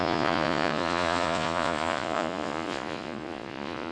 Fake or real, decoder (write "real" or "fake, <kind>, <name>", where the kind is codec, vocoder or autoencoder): fake, vocoder, Vocos